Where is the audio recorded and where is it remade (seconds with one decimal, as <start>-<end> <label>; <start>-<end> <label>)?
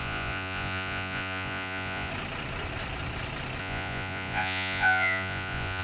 0.0-2.1 remade; 2.1-3.6 recorded; 3.6-5.8 remade